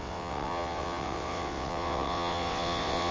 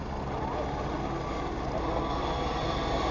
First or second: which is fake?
first